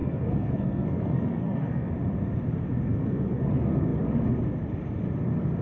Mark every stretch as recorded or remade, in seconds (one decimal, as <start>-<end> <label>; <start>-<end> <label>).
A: 0.0-1.9 remade; 1.9-2.9 recorded; 2.9-3.4 remade; 3.4-5.6 recorded